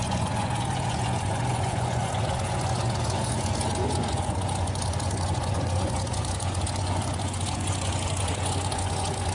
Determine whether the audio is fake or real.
fake